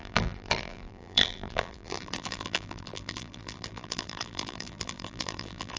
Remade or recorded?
remade